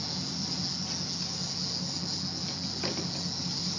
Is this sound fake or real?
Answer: real